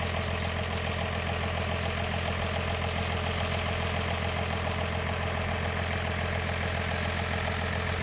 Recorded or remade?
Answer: recorded